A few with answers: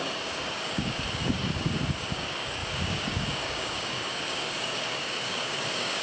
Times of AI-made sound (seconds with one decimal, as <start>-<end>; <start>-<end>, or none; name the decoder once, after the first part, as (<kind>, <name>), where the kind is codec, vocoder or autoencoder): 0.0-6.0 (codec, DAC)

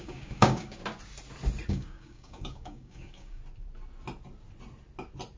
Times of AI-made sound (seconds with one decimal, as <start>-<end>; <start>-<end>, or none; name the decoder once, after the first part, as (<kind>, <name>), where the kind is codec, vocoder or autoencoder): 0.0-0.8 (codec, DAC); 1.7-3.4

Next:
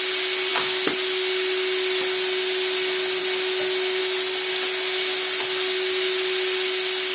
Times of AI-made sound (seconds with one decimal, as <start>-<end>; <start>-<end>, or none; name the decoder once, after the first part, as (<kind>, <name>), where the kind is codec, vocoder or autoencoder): none

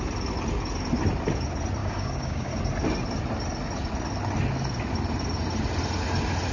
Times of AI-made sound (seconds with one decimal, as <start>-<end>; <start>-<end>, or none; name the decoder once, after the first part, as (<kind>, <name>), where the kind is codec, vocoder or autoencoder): 1.8-2.5 (codec, DAC)